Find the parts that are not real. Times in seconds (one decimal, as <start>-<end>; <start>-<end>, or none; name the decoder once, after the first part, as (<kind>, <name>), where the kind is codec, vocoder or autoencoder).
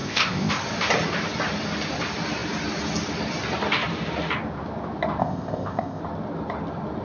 0.0-0.5 (codec, ZipCodec); 5.2-6.0